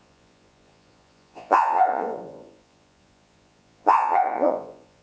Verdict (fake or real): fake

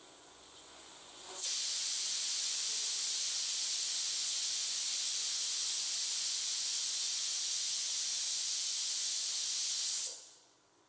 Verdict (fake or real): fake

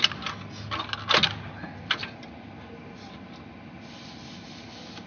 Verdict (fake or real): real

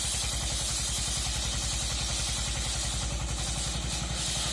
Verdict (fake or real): real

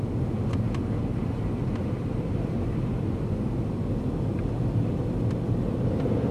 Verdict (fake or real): real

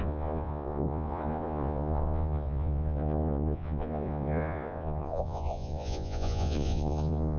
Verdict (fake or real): fake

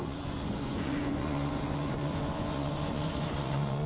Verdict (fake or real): fake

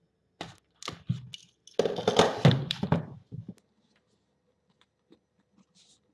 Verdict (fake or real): real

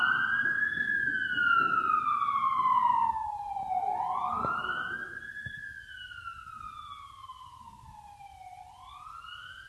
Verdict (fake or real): real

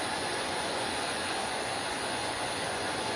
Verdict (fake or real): fake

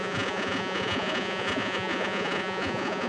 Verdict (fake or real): fake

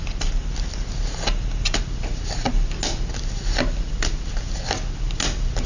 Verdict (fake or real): real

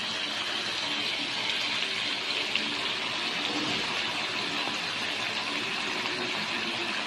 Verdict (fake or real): real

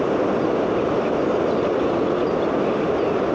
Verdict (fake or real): real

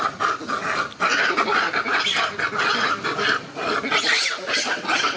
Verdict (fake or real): real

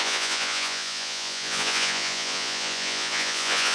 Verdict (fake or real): fake